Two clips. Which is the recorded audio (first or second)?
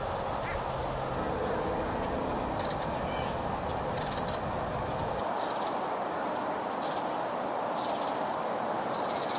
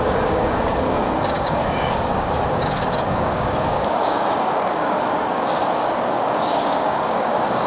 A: first